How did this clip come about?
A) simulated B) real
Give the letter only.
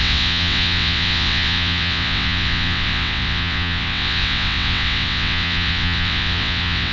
A